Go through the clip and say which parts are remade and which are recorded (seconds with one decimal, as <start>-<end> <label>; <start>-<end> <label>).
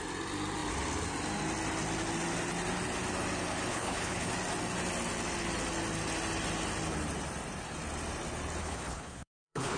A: 0.0-3.7 recorded; 3.7-4.3 remade; 4.3-8.6 recorded; 8.6-9.8 remade